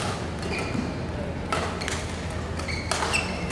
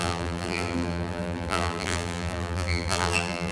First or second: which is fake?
second